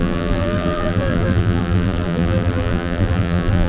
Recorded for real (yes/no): no